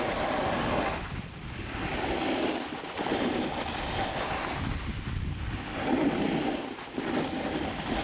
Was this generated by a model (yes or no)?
no